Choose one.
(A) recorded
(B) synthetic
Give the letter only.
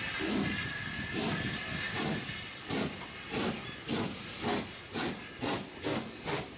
A